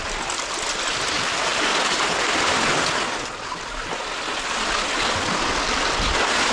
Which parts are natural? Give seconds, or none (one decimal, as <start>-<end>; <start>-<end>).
0.0-6.5